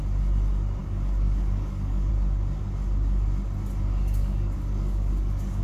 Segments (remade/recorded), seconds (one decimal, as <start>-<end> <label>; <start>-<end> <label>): 0.0-0.8 recorded; 0.8-2.1 remade; 2.1-4.2 recorded; 4.2-5.6 remade